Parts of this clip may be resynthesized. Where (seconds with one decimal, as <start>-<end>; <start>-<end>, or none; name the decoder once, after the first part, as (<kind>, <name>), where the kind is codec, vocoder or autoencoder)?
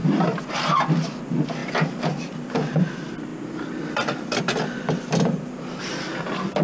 0.0-0.5 (vocoder, BigVGAN v2); 1.6-2.5; 3.3-5.8